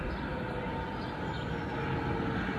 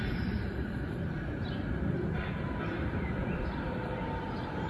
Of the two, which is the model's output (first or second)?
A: second